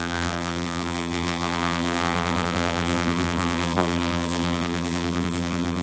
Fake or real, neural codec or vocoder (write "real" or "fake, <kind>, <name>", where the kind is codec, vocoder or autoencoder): fake, vocoder, BigVGAN v2